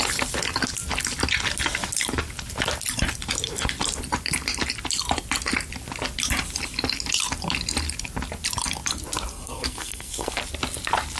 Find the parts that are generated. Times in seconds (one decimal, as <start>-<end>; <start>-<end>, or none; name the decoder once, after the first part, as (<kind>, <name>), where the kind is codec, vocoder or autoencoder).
9.3-10.4 (codec, SNAC)